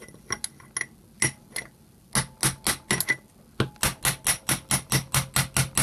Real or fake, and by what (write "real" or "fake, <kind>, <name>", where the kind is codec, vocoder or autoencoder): real